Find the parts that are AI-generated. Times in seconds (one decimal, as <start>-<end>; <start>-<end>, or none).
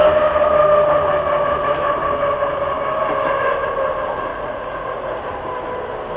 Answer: 4.3-5.2